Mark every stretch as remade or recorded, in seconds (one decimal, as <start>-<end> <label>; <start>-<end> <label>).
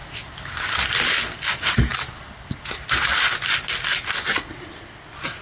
0.0-5.4 recorded